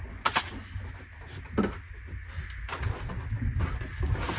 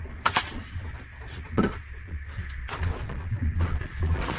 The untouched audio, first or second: first